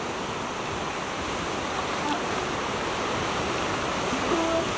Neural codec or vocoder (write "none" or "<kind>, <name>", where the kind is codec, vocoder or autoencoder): none